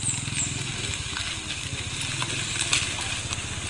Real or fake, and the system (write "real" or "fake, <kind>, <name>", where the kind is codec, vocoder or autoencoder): real